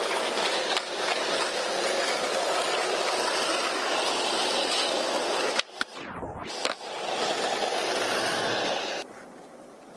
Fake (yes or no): no